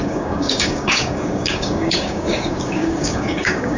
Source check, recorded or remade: remade